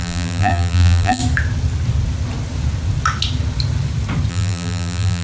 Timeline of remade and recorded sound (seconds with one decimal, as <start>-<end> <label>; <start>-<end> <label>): 0.0-1.2 remade; 1.2-4.3 recorded; 4.3-5.2 remade